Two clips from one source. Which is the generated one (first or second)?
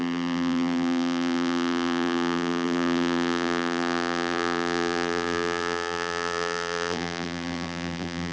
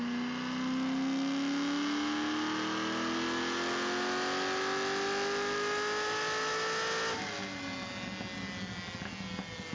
first